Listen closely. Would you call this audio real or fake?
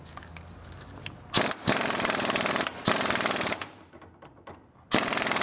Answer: real